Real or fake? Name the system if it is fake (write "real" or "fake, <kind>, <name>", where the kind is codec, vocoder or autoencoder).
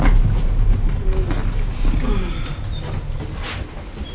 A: real